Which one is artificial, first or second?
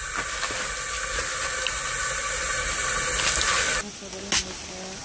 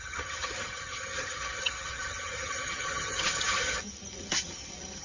second